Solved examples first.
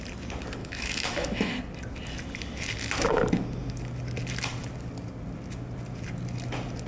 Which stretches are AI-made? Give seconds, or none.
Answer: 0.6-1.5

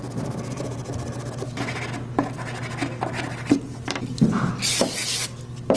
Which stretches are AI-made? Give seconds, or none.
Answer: none

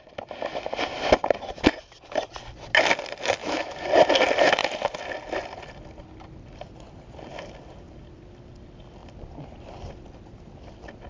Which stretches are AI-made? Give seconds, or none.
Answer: 3.4-3.9

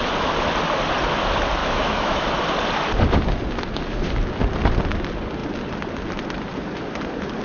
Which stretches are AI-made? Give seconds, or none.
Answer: 1.6-2.3

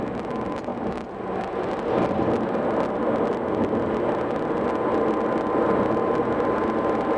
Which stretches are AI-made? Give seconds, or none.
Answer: none

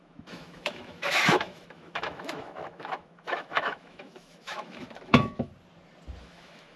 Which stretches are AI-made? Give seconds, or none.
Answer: 0.0-5.5; 6.2-6.8

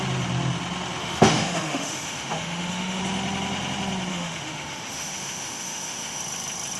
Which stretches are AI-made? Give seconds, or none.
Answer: 1.0-3.0; 4.1-6.2